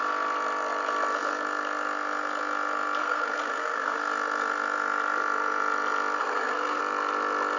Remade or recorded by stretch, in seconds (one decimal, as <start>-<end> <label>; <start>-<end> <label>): 0.0-3.0 recorded; 3.0-4.0 remade; 4.0-6.2 recorded; 6.2-6.8 remade; 6.8-7.6 recorded

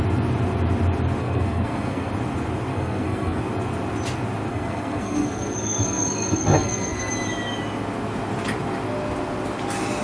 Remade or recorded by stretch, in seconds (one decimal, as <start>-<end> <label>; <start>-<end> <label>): 0.0-1.2 recorded; 1.2-2.1 remade; 2.1-2.7 recorded; 2.7-3.4 remade; 3.4-4.5 recorded; 4.5-7.1 remade; 7.1-10.0 recorded

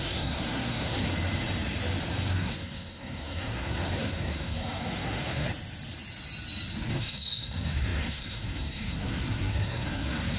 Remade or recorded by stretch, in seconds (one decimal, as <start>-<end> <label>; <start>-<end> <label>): 0.0-1.1 remade; 1.1-2.3 recorded; 2.3-5.5 remade; 5.5-6.9 recorded; 6.9-10.4 remade